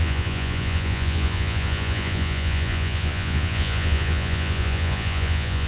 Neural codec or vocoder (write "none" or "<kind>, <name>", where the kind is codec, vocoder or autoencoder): vocoder, Vocos